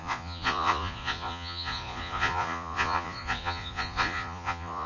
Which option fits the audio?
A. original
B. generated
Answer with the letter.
B